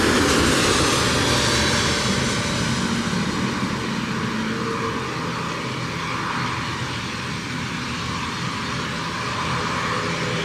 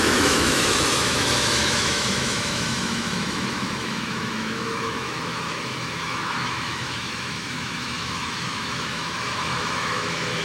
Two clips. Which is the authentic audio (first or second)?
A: first